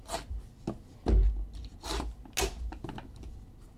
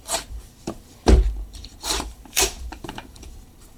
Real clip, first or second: first